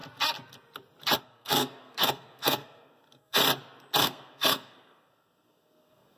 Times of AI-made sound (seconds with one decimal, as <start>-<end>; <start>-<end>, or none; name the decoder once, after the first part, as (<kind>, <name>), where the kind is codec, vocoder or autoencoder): 1.2-3.4 (codec, SNAC); 4.0-6.2